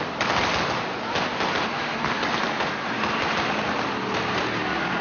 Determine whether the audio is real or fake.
real